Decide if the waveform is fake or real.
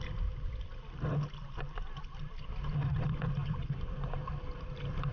fake